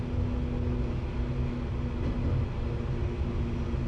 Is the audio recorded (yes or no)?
yes